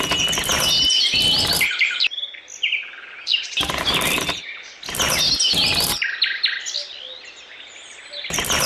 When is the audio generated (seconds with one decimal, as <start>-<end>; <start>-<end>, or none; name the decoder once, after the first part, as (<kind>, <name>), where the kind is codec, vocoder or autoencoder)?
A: none